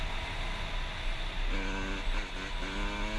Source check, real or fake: real